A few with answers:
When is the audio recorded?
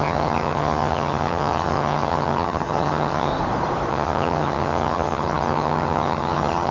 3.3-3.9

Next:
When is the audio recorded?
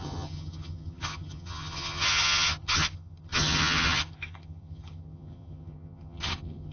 none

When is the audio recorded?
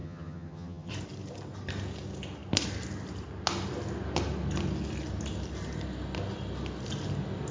0.9-7.5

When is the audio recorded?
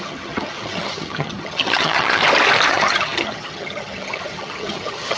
2.2-2.7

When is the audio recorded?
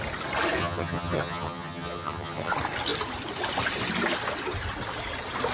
0.0-0.6; 2.5-5.5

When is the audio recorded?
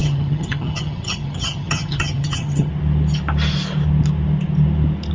2.7-5.1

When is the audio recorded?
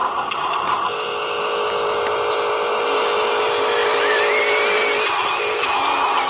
0.0-6.3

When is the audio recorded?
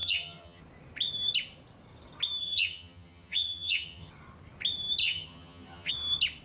0.6-2.4; 4.1-5.0; 5.9-6.4